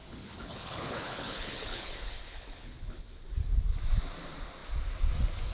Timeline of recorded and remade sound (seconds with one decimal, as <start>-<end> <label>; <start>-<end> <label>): 0.0-3.0 remade; 3.0-5.5 recorded